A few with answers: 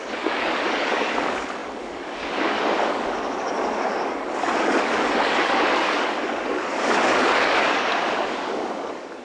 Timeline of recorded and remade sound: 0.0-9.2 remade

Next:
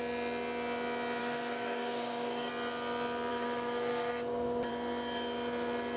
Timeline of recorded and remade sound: 0.0-1.2 recorded; 1.2-2.5 remade; 2.5-3.3 recorded; 3.3-4.7 remade; 4.7-6.0 recorded

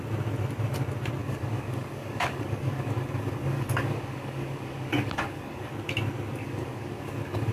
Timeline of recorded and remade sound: 0.0-1.2 recorded; 1.2-5.7 remade; 5.7-6.4 recorded; 6.4-7.5 remade

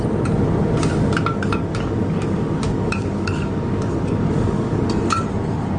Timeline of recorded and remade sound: 0.0-1.3 recorded; 1.3-4.8 remade; 4.8-5.8 recorded